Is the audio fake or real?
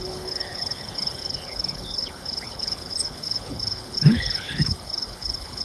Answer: fake